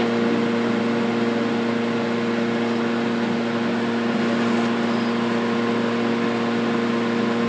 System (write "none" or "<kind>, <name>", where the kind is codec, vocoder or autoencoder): none